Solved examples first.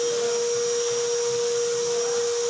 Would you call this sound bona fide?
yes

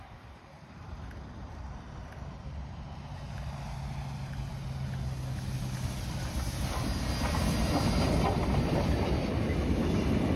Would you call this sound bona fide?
yes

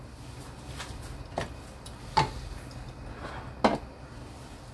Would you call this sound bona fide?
yes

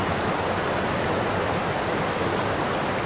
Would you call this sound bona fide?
yes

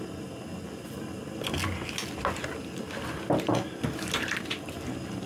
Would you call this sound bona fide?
yes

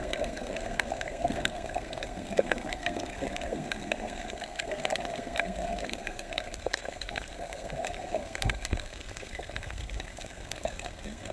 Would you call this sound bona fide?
no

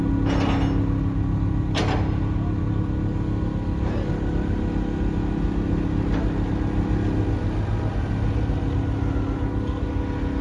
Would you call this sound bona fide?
yes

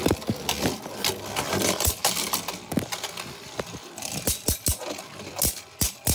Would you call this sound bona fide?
yes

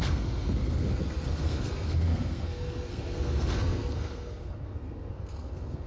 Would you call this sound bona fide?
no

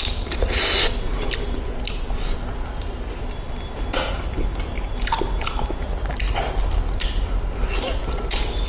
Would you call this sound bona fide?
yes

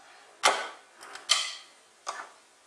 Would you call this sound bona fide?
yes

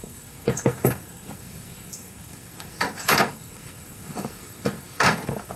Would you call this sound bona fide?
no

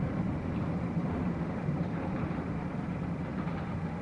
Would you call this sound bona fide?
yes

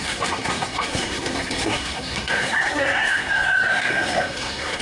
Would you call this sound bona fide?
no